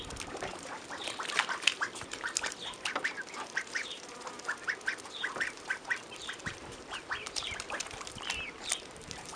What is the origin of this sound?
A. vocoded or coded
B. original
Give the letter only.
A